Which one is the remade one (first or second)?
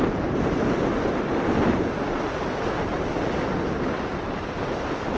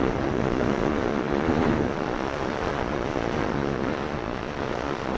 second